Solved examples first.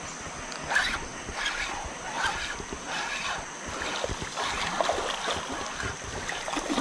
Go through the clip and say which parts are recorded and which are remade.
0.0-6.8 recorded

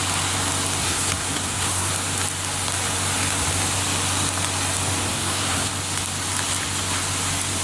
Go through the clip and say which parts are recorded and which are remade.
0.0-0.8 recorded; 0.8-1.9 remade; 1.9-5.1 recorded; 5.1-5.7 remade; 5.7-7.6 recorded

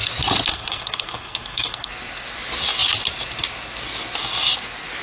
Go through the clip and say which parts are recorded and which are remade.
0.0-0.5 recorded; 0.5-1.9 remade; 1.9-5.0 recorded

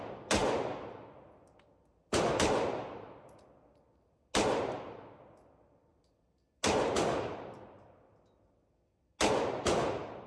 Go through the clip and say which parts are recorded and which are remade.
0.0-10.3 recorded

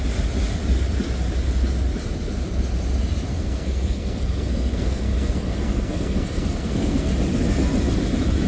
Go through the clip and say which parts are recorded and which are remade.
0.0-3.3 recorded; 3.3-7.1 remade; 7.1-8.5 recorded